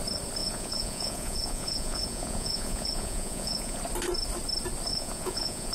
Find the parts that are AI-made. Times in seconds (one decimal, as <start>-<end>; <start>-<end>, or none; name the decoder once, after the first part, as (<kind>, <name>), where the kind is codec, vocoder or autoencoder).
0.4-3.8 (vocoder, Vocos); 4.9-5.7